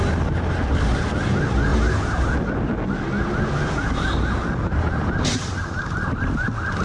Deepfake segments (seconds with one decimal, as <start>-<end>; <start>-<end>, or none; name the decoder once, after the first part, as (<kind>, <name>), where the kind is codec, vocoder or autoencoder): none

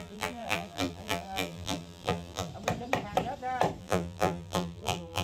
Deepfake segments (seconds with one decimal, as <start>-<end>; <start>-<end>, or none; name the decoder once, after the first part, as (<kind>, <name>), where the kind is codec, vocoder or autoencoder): 0.0-2.5 (vocoder, BigVGAN v2); 3.8-5.2

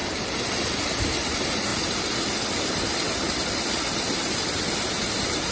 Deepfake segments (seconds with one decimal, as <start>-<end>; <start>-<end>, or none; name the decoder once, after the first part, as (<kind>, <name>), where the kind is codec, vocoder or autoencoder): none

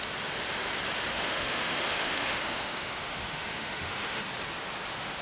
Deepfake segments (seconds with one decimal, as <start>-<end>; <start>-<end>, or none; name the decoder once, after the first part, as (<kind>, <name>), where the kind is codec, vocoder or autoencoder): 1.1-4.2 (autoencoder, DAC-VAE)

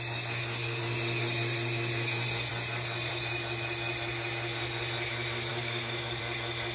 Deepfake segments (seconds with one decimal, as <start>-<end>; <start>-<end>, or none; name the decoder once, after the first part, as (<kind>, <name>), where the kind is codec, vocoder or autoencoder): 5.5-6.2 (codec, DAC)

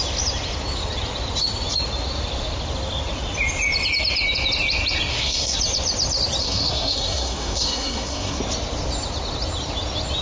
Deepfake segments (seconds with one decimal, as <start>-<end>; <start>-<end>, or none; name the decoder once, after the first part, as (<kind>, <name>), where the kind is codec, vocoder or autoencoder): 5.1-5.6 (codec, SNAC); 6.4-8.4

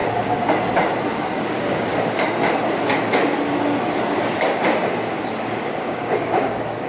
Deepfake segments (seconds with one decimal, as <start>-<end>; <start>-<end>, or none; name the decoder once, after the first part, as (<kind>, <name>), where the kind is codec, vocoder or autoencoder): 1.4-1.9 (codec, DAC); 5.6-6.9

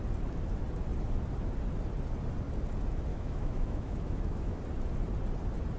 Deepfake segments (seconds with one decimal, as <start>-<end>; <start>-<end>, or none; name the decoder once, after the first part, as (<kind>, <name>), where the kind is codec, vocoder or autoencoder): 3.1-4.6 (autoencoder, DAC-VAE)